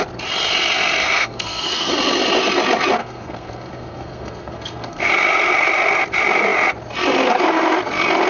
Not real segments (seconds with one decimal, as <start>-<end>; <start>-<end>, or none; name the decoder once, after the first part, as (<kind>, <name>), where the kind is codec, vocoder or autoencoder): 1.0-1.9 (codec, SNAC); 3.0-5.1